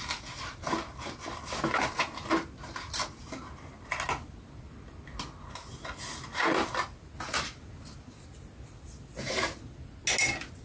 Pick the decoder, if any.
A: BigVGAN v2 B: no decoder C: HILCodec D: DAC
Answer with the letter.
B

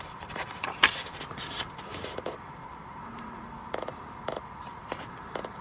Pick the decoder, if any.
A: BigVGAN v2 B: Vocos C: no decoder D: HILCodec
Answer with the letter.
A